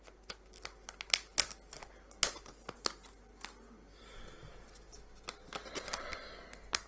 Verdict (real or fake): real